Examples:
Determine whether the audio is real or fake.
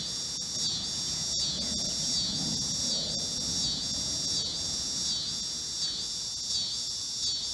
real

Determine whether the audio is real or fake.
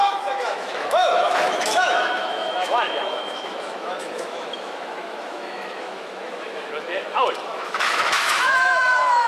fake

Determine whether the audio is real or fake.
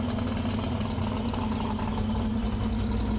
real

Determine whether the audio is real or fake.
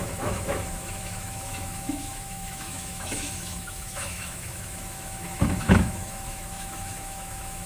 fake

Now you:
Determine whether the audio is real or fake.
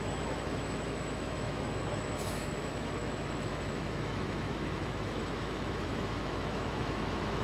fake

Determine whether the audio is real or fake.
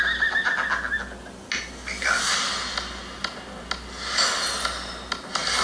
real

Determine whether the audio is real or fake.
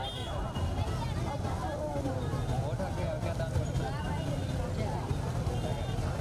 real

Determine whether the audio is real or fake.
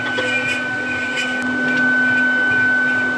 real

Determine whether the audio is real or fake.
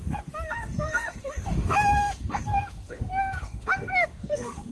fake